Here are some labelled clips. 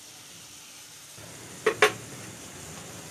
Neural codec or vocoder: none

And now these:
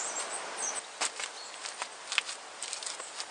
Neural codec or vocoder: none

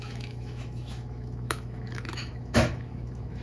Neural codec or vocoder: autoencoder, DAC-VAE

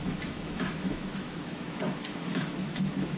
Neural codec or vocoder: autoencoder, DAC-VAE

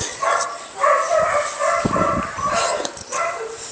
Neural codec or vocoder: none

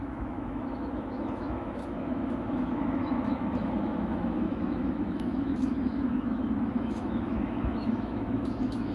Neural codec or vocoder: autoencoder, DAC-VAE